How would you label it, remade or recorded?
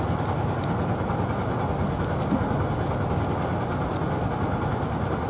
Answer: recorded